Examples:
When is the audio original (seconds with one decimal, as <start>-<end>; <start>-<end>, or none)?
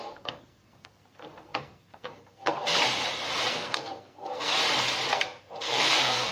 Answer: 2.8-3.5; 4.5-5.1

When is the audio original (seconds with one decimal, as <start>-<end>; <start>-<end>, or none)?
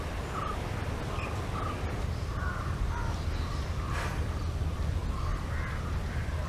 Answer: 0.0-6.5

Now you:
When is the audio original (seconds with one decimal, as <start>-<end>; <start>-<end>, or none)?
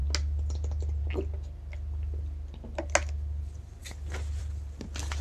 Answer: 0.0-5.2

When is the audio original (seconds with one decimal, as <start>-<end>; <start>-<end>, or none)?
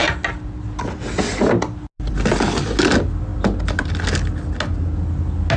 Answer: 0.0-5.6